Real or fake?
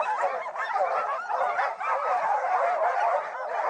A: real